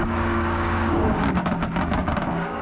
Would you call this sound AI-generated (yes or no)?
yes